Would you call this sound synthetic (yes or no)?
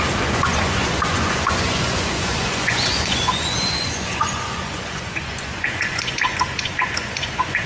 yes